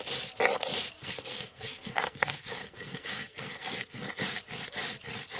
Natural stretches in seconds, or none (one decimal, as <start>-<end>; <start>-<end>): 0.0-1.0; 4.2-5.4